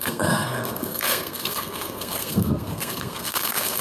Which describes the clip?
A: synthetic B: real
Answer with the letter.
A